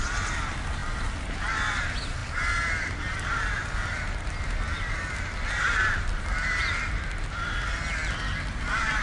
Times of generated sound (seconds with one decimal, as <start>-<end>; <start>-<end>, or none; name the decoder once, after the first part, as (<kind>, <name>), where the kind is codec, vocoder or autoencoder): 6.4-7.5 (vocoder, BigVGAN v2)